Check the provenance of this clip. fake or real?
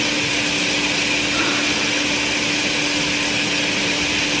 real